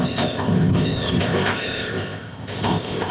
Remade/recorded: remade